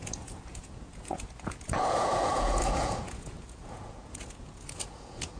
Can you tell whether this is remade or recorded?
remade